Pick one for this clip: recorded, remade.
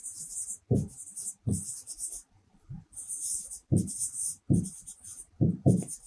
remade